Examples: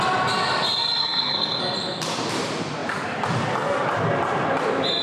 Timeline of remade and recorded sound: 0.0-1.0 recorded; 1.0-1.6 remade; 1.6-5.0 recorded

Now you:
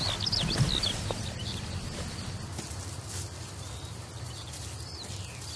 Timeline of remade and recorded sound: 0.0-5.6 recorded

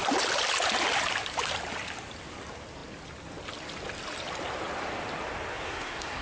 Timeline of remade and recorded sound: 0.0-5.5 recorded; 5.5-6.2 remade

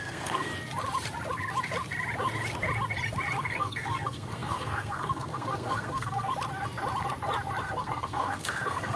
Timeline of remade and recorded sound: 0.0-0.5 remade; 0.5-3.4 recorded; 3.4-6.3 remade; 6.3-7.6 recorded; 7.6-9.0 remade

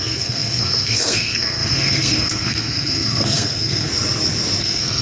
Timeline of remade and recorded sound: 0.0-3.9 remade; 3.9-4.6 recorded; 4.6-5.0 remade

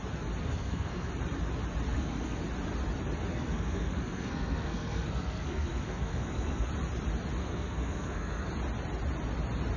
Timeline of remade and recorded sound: 0.0-0.4 recorded; 0.4-1.1 remade; 1.1-1.9 recorded; 1.9-2.4 remade; 2.4-3.3 recorded; 3.3-6.7 remade; 6.7-7.4 recorded; 7.4-8.5 remade; 8.5-9.8 recorded